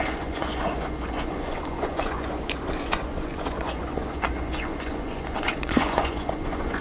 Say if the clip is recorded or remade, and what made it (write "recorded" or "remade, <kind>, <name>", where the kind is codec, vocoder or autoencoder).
remade, vocoder, Vocos